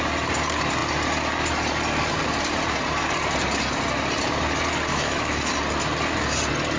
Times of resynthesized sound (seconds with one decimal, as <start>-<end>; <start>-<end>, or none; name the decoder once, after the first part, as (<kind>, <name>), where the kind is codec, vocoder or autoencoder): 4.9-5.5 (autoencoder, DAC-VAE)